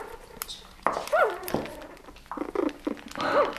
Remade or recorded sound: recorded